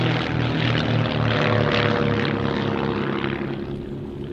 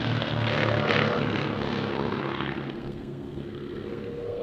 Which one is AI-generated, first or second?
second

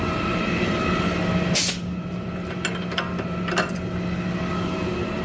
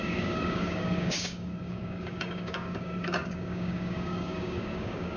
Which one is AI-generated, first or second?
second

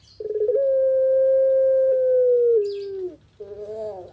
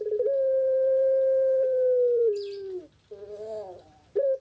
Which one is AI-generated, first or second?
second